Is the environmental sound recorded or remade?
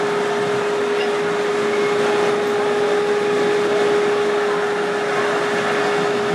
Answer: recorded